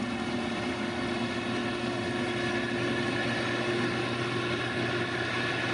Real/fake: real